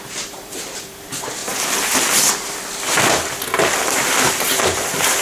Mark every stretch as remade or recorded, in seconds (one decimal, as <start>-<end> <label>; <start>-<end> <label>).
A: 0.0-1.4 remade; 1.4-4.3 recorded; 4.3-5.2 remade